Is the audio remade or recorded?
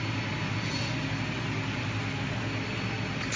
recorded